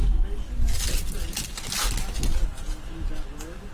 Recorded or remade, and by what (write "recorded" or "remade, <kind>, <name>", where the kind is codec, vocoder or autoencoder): recorded